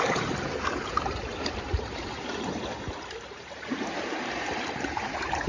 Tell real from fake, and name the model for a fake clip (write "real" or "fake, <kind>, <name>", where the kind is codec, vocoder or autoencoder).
fake, vocoder, BigVGAN v2